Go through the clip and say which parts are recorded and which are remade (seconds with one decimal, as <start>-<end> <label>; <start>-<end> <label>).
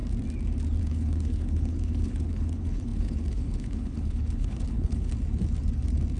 0.0-0.8 recorded; 0.8-5.1 remade; 5.1-6.2 recorded